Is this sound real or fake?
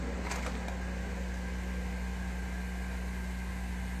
real